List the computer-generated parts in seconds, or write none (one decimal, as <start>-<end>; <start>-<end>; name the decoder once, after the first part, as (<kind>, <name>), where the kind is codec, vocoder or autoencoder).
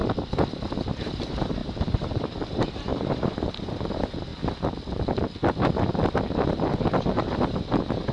1.0-4.3 (vocoder, BigVGAN v2); 6.9-8.1